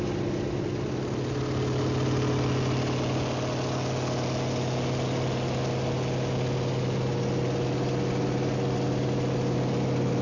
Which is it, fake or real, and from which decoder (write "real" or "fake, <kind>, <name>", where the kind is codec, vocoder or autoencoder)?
real